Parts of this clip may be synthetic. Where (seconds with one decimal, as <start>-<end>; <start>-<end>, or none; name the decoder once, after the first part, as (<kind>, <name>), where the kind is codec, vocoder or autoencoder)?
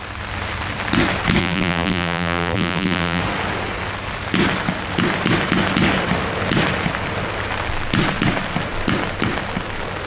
1.4-3.2 (vocoder, BigVGAN v2)